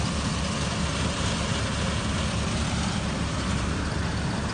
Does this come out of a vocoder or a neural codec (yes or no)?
no